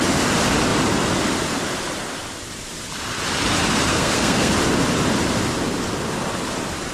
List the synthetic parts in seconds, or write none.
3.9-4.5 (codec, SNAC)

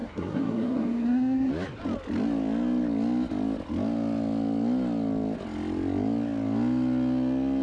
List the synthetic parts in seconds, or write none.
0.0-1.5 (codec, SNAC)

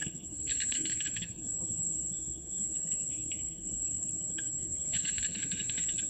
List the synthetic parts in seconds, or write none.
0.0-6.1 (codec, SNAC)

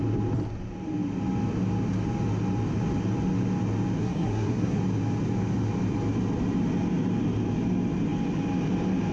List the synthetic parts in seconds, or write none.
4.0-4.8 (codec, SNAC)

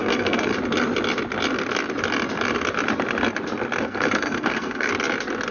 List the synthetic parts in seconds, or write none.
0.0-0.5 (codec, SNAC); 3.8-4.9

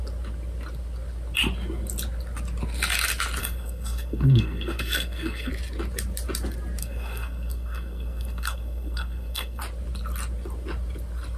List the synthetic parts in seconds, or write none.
3.4-5.5 (codec, SNAC); 6.8-9.6